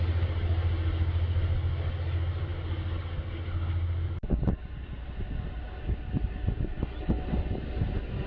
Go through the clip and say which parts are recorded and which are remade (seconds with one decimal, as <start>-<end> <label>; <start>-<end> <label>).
0.0-8.3 recorded